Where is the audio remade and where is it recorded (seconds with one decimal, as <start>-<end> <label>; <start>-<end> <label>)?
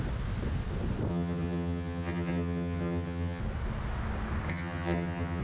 0.0-1.1 recorded; 1.1-3.4 remade; 3.4-4.5 recorded; 4.5-5.4 remade